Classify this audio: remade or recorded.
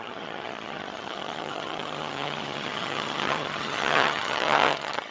remade